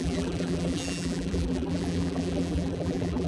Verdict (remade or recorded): remade